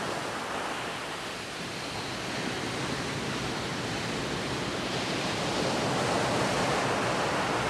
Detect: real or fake real